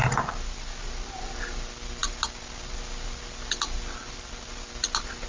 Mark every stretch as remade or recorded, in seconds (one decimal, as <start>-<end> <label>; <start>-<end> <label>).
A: 0.0-5.3 recorded